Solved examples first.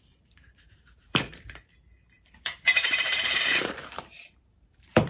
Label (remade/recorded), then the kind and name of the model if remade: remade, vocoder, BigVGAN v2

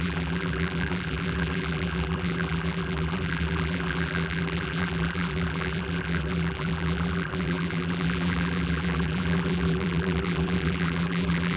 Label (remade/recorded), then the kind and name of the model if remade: remade, vocoder, BigVGAN v2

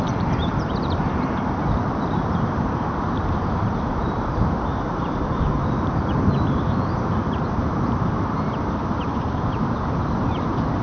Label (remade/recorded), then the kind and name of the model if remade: remade, vocoder, BigVGAN v2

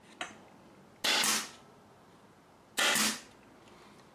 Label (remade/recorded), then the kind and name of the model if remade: recorded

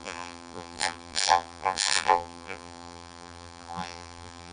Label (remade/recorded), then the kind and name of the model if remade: remade, vocoder, BigVGAN v2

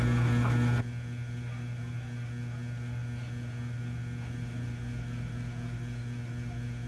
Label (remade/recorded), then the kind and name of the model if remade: recorded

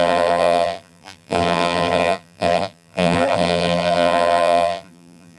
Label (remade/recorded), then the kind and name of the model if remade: remade, vocoder, BigVGAN v2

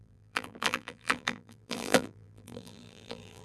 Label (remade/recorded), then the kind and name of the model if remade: remade, vocoder, BigVGAN v2